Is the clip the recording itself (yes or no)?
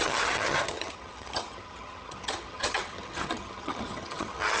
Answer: no